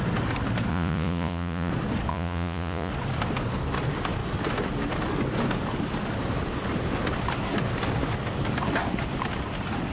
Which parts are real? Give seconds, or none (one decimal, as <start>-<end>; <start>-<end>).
0.0-0.7; 1.7-2.1; 2.9-9.9